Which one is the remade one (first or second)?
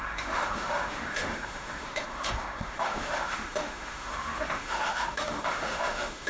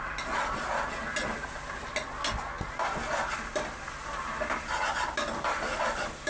first